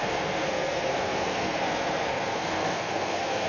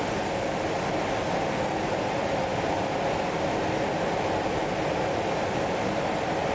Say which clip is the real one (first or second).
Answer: second